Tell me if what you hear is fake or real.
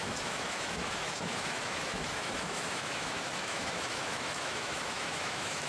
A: fake